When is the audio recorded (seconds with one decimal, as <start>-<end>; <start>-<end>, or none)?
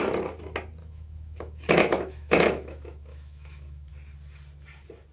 0.0-0.8; 3.9-5.1